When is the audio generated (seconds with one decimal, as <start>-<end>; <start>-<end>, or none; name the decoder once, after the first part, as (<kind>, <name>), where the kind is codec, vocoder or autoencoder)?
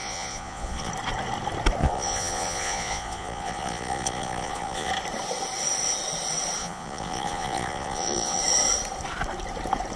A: 0.0-0.9 (vocoder, Vocos); 1.8-4.9; 6.6-8.4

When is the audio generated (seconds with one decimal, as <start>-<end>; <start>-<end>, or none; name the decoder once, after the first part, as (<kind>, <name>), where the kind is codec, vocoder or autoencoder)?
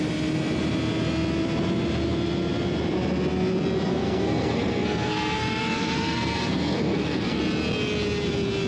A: 3.9-7.4 (codec, SNAC)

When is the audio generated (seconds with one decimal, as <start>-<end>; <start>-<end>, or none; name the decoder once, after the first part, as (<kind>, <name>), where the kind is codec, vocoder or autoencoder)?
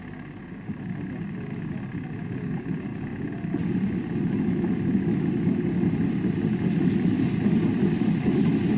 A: none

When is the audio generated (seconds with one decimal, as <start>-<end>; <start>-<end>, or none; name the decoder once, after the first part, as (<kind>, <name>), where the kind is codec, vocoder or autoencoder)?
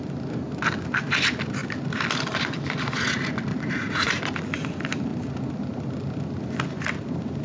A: 3.5-4.2 (vocoder, Vocos)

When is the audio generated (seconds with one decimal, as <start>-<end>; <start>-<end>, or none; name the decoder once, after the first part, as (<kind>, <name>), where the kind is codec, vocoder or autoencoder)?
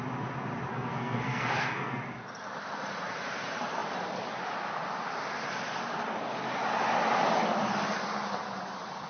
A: 0.7-2.0 (codec, SNAC)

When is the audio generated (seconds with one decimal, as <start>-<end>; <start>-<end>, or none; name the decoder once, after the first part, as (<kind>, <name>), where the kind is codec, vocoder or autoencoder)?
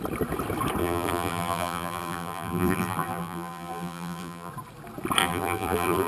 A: 0.8-4.5 (vocoder, BigVGAN v2); 5.2-6.1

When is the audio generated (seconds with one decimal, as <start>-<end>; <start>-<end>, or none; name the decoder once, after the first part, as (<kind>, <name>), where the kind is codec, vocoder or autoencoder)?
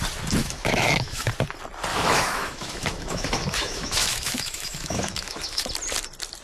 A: 0.4-1.3 (autoencoder, DAC-VAE); 1.9-5.7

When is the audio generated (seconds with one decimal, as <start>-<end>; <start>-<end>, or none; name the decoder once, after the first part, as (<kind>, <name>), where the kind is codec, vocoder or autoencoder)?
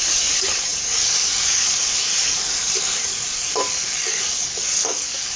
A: 0.0-5.4 (codec, DAC)